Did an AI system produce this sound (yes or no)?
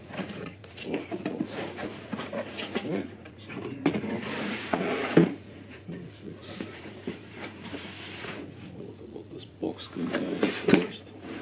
yes